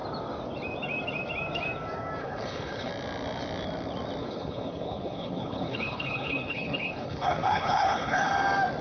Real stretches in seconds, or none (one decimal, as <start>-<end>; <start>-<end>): 0.0-2.2; 2.9-4.2; 8.3-8.8